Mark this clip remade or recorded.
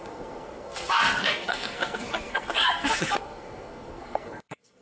remade